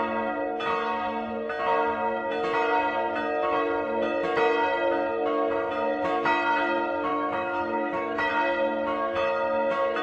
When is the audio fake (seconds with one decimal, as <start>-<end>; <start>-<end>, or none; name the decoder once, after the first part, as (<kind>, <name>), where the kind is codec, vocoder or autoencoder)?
7.1-8.3 (autoencoder, DAC-VAE)